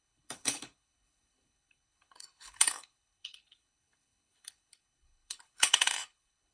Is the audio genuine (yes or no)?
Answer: no